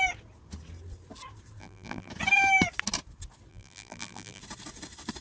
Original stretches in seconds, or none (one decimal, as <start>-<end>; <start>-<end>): 0.0-1.6; 2.1-3.5; 4.4-5.2